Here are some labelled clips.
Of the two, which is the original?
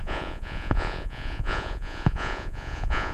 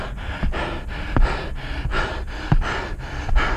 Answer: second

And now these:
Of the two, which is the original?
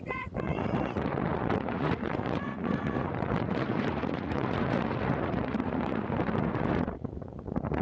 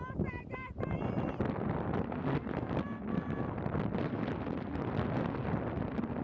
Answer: second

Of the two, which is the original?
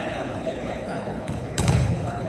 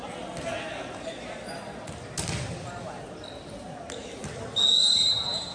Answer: second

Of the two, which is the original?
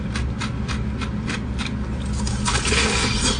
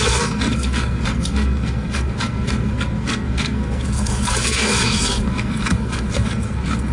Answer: first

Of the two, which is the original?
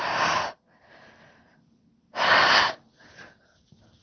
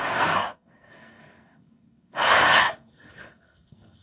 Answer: first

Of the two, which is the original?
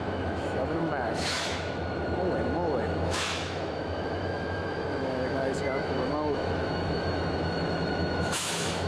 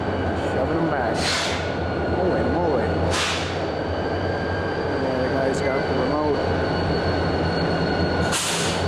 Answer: second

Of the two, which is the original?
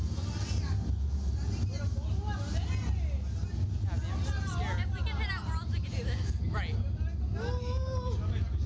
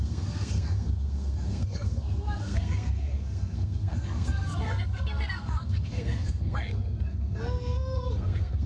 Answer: first